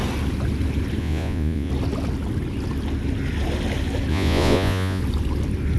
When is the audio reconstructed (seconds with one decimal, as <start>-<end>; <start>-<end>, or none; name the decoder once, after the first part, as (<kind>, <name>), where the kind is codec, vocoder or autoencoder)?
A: 1.0-1.7 (vocoder, Vocos); 4.1-5.0